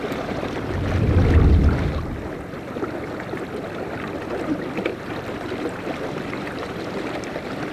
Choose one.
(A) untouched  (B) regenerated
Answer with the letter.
B